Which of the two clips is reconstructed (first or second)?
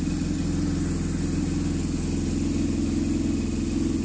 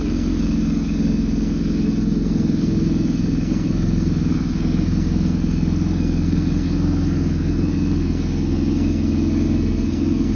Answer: second